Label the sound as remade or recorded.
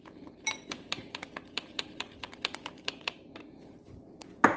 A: recorded